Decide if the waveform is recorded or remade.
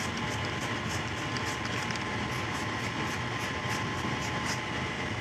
recorded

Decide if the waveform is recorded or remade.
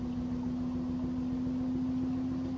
recorded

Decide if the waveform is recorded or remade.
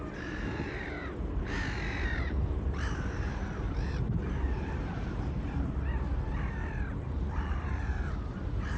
remade